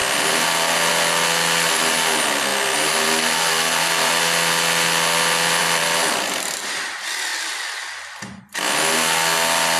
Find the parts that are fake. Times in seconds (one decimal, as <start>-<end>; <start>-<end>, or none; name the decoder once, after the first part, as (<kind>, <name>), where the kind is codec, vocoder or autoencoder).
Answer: 0.0-0.9 (vocoder, BigVGAN v2); 2.5-4.1; 5.6-6.6